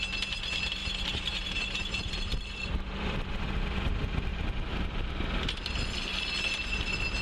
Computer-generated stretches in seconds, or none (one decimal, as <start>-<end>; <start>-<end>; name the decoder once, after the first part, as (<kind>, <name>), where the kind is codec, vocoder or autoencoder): 0.8-3.4 (vocoder, BigVGAN v2); 4.3-5.1